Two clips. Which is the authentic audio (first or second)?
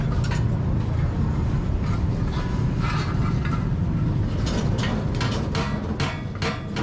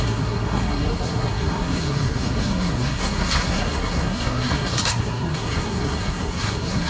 first